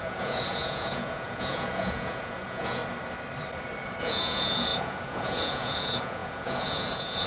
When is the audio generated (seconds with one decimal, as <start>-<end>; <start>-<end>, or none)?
0.0-2.8; 4.0-7.3

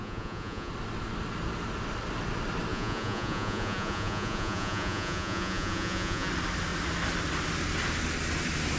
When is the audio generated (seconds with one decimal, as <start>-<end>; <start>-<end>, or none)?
0.0-0.7; 2.7-6.3